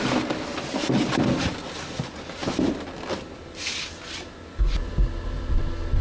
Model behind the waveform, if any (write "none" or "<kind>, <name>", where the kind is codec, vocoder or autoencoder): none